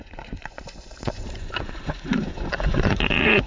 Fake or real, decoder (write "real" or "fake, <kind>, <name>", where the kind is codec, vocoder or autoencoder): fake, vocoder, Vocos